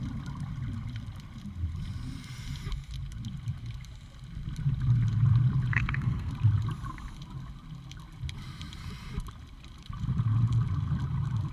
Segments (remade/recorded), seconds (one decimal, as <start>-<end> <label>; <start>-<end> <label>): 0.0-5.7 recorded; 5.7-6.3 remade; 6.3-11.5 recorded